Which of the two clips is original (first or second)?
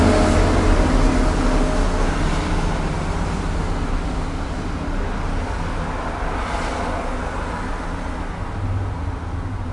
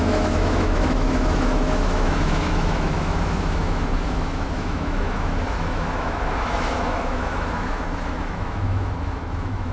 first